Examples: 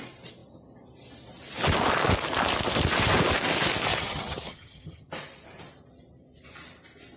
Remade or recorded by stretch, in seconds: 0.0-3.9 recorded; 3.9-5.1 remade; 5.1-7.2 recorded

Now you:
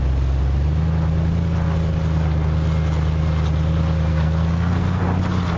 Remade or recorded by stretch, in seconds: 0.0-4.1 recorded; 4.1-5.0 remade; 5.0-5.6 recorded